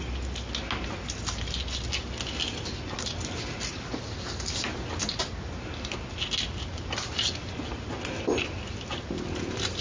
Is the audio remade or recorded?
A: recorded